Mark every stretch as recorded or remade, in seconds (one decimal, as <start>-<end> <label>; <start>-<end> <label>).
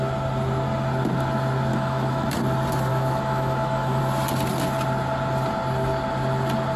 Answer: 0.0-1.7 recorded; 1.7-2.3 remade; 2.3-2.9 recorded; 2.9-4.0 remade; 4.0-6.8 recorded